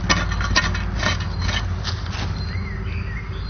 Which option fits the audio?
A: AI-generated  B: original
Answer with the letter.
B